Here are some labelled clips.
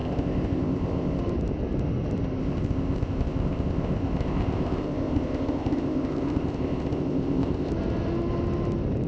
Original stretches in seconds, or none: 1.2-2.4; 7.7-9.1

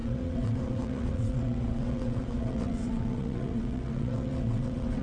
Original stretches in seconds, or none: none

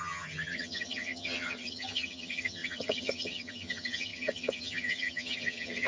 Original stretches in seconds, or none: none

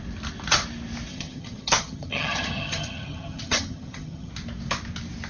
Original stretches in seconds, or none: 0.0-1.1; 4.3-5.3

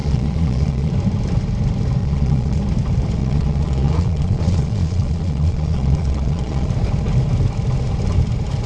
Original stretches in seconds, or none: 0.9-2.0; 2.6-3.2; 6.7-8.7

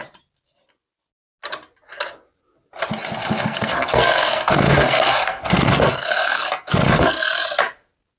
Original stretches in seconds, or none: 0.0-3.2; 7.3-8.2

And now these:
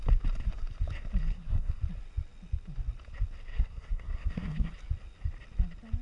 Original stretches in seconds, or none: 0.0-1.3; 1.8-3.5; 4.7-6.0